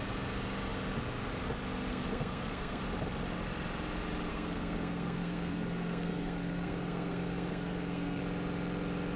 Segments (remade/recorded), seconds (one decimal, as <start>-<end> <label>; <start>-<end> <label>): 0.0-1.9 recorded; 1.9-2.8 remade; 2.8-4.3 recorded; 4.3-8.2 remade; 8.2-9.2 recorded